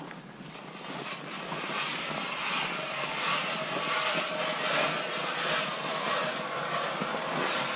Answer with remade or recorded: recorded